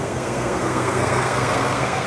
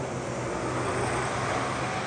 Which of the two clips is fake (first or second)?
first